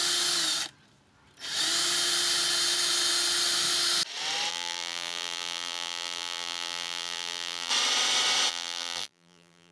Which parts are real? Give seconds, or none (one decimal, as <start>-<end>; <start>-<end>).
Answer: 0.0-4.5; 7.7-8.5

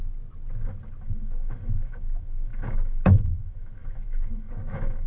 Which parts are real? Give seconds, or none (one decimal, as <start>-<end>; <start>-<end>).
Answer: 0.0-1.0

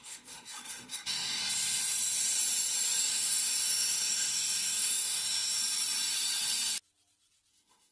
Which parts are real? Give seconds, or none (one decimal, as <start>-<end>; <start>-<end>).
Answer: 1.4-3.0; 5.6-7.5

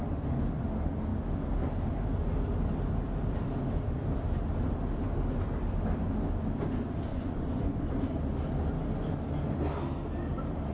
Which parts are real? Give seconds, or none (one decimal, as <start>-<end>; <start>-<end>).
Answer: 0.0-7.1; 7.9-10.7